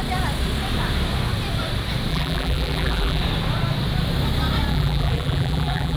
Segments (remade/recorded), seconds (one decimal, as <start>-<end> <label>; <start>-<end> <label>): 0.0-2.1 recorded; 2.1-3.2 remade; 3.2-4.7 recorded; 4.7-6.0 remade